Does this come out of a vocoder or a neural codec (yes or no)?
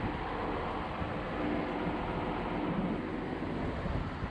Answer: no